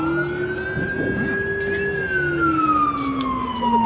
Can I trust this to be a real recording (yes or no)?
yes